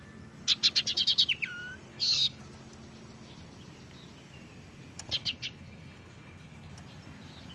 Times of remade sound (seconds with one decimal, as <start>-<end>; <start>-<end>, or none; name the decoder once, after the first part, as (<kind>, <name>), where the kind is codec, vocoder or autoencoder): 1.9-2.4 (codec, HILCodec); 5.2-6.7